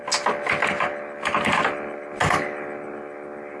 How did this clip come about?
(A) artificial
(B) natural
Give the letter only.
B